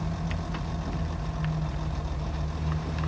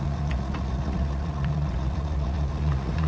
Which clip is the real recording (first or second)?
first